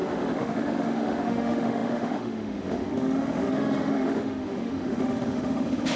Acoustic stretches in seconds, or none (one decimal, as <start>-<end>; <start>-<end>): none